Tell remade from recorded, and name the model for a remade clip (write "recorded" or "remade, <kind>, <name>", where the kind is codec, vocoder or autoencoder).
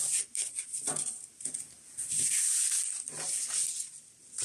recorded